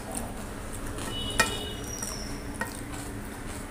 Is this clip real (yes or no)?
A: yes